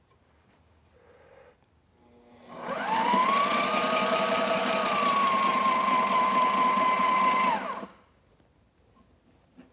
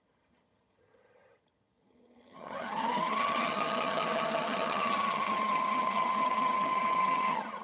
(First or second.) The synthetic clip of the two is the second